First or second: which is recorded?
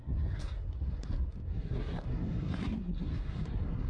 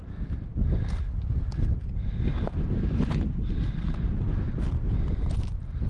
second